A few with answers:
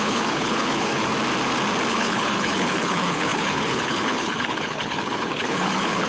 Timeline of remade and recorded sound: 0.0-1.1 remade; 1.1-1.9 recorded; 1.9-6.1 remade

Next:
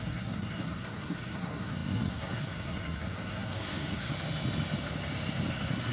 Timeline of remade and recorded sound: 0.0-4.1 remade; 4.1-5.5 recorded; 5.5-5.9 remade

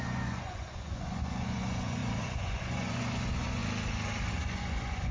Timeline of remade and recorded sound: 0.0-3.6 remade; 3.6-4.3 recorded; 4.3-5.1 remade

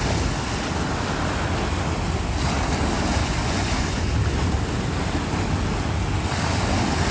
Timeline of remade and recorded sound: 0.0-3.2 recorded; 3.2-4.0 remade; 4.0-7.1 recorded

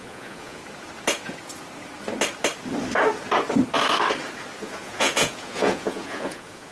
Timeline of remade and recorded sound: 0.0-0.6 remade; 0.6-4.6 recorded; 4.6-6.7 remade

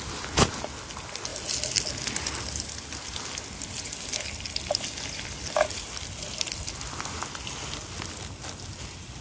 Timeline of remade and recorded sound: 0.0-9.2 recorded

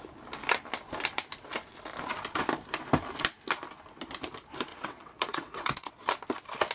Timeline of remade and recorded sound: 0.0-4.7 recorded; 4.7-5.9 remade; 5.9-6.7 recorded